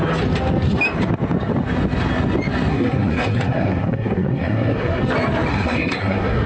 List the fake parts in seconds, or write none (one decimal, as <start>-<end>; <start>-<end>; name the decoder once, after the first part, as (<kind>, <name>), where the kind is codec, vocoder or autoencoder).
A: 2.7-5.0 (codec, SNAC); 5.5-6.5